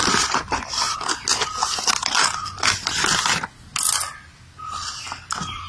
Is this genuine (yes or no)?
yes